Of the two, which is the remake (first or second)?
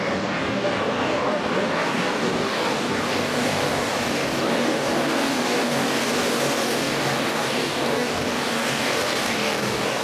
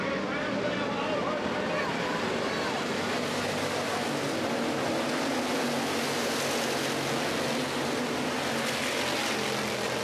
first